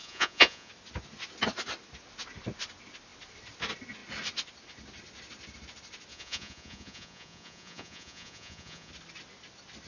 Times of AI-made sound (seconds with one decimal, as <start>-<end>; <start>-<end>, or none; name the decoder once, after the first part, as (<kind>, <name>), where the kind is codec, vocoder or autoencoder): 0.0-0.7 (vocoder, Vocos); 6.1-8.9